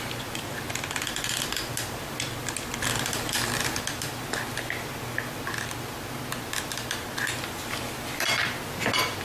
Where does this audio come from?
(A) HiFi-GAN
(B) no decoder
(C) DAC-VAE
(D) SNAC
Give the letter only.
B